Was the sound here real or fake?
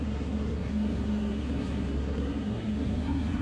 fake